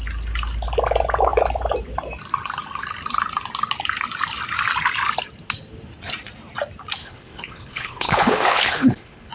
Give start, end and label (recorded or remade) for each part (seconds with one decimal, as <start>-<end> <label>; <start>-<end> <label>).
0.0-7.0 recorded; 7.0-9.3 remade